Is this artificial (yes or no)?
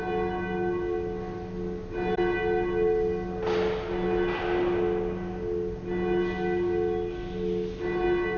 no